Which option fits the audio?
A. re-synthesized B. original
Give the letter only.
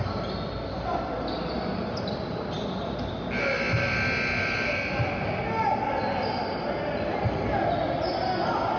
B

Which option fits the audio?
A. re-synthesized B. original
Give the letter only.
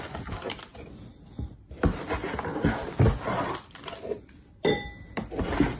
B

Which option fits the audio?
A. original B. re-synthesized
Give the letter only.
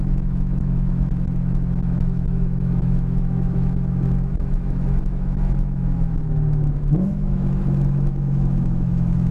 B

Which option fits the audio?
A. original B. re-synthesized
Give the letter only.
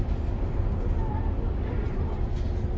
A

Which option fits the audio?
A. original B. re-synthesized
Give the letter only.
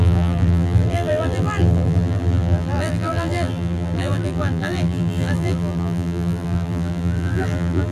B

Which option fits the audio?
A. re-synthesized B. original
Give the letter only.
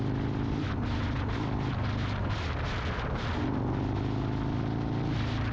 A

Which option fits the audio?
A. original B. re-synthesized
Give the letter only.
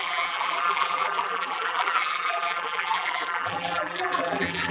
B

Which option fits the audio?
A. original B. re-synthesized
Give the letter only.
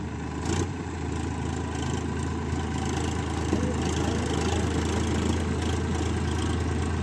A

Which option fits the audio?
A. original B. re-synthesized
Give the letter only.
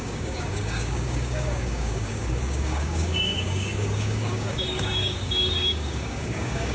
B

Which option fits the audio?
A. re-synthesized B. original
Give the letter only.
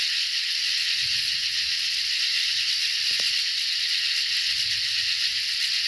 A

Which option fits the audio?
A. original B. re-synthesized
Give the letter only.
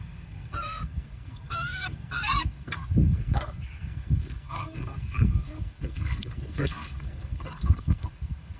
B